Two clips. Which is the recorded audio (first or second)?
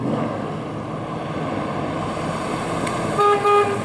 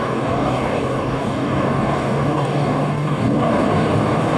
first